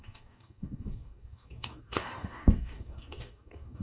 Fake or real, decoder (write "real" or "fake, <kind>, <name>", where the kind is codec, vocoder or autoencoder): fake, codec, DAC